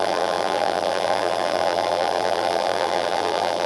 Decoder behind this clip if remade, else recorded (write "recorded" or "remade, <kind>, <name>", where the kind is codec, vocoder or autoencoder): remade, vocoder, BigVGAN v2